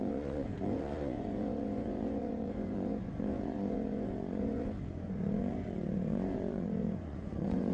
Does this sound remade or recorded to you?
remade